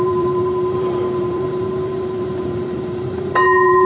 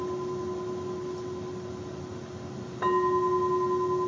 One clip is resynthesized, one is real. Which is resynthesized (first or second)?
first